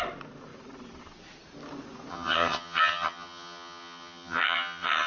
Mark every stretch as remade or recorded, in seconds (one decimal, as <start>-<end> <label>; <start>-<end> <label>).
0.0-2.1 recorded; 2.1-5.1 remade